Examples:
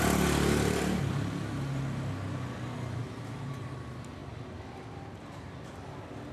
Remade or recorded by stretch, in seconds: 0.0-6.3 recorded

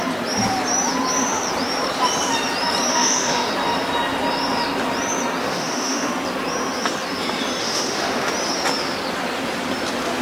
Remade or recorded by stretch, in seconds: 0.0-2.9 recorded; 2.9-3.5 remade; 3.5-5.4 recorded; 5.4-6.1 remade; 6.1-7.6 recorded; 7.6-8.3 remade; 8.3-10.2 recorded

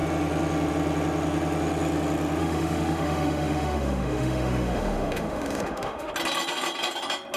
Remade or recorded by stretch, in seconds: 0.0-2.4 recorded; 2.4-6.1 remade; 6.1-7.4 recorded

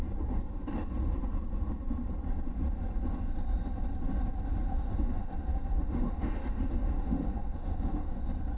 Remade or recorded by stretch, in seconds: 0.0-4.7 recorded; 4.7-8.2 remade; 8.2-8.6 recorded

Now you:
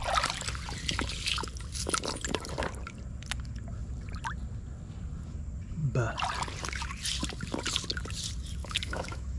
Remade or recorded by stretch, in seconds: 0.0-8.6 recorded; 8.6-9.4 remade

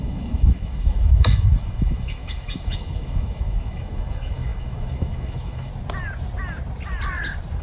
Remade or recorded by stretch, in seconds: 0.0-5.7 remade; 5.7-7.6 recorded

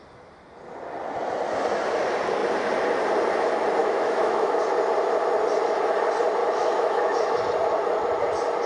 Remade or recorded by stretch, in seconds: 0.0-3.8 recorded; 3.8-4.6 remade; 4.6-6.4 recorded; 6.4-7.4 remade; 7.4-8.7 recorded